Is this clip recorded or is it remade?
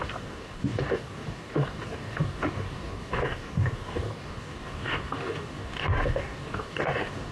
remade